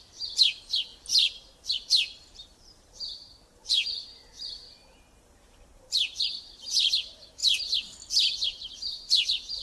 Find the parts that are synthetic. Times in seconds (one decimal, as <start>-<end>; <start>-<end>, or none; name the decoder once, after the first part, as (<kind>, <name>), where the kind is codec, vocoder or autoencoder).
0.0-7.4 (vocoder, BigVGAN v2); 8.1-9.6